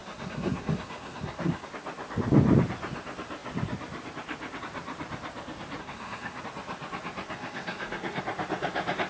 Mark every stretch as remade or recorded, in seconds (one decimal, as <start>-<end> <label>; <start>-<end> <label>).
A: 0.0-1.7 remade; 1.7-5.8 recorded; 5.8-6.4 remade; 6.4-7.4 recorded; 7.4-8.2 remade; 8.2-9.1 recorded